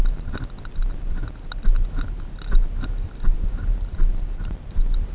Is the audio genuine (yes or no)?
yes